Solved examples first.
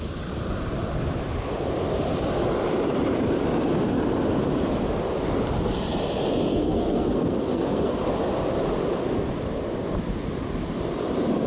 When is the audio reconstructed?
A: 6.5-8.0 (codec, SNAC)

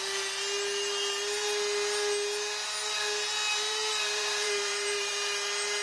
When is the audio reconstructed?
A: 3.5-5.1 (vocoder, BigVGAN v2)

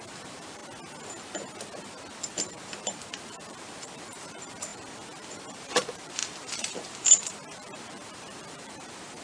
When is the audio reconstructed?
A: 0.0-0.6 (vocoder, BigVGAN v2); 2.3-9.2

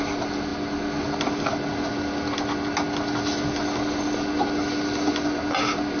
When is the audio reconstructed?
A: none

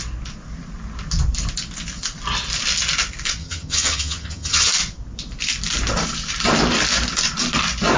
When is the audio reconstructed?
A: 3.4-4.7 (vocoder, HiFi-GAN)

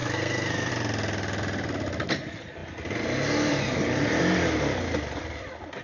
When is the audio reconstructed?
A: 0.0-0.7 (codec, SNAC)

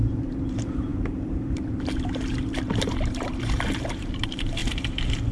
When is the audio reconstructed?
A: 0.0-5.3 (vocoder, BigVGAN v2)

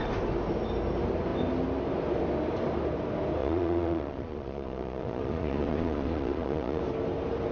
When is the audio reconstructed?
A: 3.4-6.8 (vocoder, Vocos)